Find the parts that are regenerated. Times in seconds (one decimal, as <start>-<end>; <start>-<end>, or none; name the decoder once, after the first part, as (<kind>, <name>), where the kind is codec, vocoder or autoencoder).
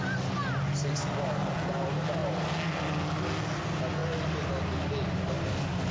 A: none